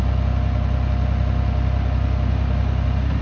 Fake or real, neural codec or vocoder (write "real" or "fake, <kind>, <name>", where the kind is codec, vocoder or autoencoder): real